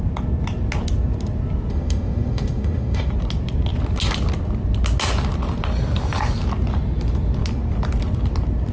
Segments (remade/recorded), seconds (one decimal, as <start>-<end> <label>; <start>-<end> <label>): 0.0-1.7 recorded; 1.7-3.1 remade; 3.1-8.7 recorded